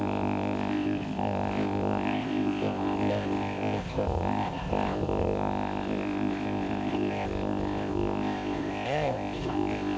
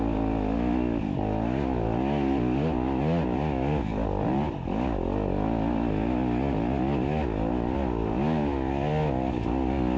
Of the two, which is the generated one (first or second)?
first